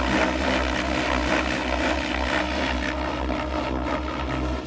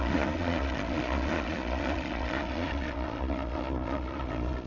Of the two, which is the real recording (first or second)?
first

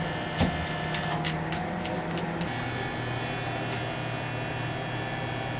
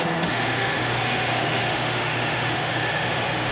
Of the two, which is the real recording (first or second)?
first